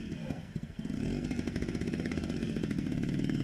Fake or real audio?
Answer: fake